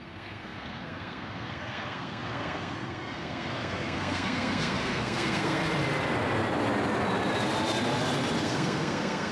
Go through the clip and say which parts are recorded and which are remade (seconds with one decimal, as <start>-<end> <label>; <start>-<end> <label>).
0.0-5.6 remade; 5.6-8.4 recorded; 8.4-9.3 remade